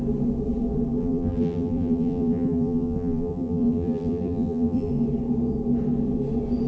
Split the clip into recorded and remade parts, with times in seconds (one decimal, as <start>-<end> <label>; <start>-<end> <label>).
0.0-1.0 recorded; 1.0-4.9 remade; 4.9-6.7 recorded